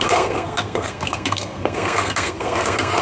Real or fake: fake